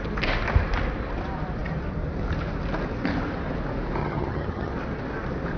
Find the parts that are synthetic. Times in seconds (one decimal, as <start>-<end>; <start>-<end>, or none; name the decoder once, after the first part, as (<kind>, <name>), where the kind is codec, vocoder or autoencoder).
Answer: 4.0-4.7 (vocoder, HiFi-GAN)

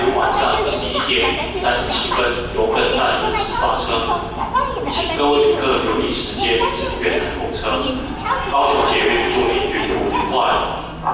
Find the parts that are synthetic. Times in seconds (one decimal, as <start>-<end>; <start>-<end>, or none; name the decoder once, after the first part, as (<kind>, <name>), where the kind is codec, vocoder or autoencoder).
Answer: none

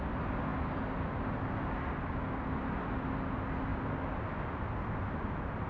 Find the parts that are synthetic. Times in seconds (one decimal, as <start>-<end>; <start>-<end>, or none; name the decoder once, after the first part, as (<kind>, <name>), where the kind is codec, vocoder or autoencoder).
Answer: none

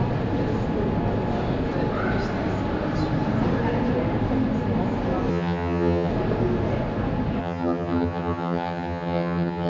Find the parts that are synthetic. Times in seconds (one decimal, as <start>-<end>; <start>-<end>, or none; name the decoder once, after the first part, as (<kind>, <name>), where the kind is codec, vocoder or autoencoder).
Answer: 5.3-6.1 (vocoder, HiFi-GAN); 7.4-9.7

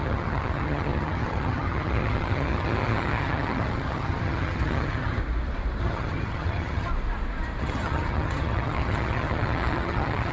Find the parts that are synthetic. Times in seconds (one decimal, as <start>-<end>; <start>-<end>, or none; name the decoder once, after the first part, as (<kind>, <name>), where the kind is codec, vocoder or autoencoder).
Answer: 0.0-5.2 (vocoder, HiFi-GAN); 5.8-6.9; 7.6-10.3

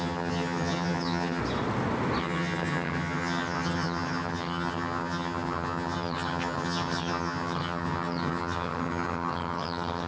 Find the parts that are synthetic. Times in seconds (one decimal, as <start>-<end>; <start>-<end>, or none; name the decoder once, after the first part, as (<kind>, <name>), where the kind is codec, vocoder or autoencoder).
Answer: 0.0-1.4 (vocoder, HiFi-GAN); 2.2-10.1